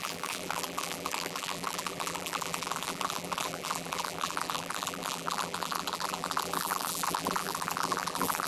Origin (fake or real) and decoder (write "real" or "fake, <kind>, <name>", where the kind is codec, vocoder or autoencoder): fake, vocoder, BigVGAN v2